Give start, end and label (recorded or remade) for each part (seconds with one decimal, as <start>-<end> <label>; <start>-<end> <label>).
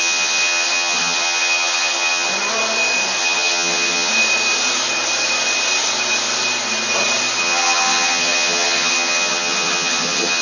0.0-2.3 remade; 2.3-3.2 recorded; 3.2-4.1 remade; 4.1-7.4 recorded; 7.4-10.4 remade